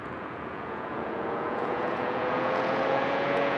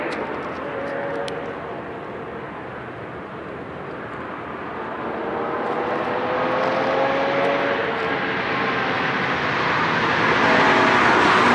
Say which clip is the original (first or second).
second